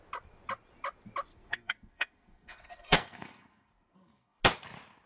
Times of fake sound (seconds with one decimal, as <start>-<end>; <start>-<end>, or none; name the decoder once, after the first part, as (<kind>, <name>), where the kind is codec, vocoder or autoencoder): 1.3-4.4 (codec, SNAC)